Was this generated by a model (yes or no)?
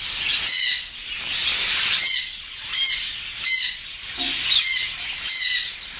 no